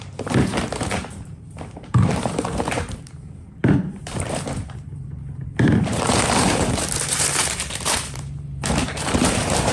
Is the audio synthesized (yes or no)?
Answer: yes